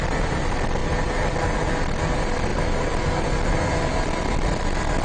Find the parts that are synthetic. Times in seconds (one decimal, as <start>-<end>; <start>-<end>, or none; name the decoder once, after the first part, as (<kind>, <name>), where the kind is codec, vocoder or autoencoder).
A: 0.8-1.6 (vocoder, BigVGAN v2); 2.5-4.3